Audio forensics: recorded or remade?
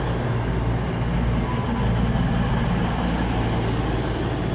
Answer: recorded